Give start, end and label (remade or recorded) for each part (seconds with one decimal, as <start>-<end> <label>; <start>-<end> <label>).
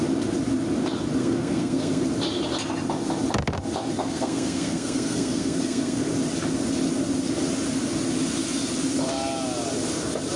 0.0-1.2 recorded; 1.2-2.0 remade; 2.0-4.0 recorded; 4.0-6.0 remade; 6.0-10.4 recorded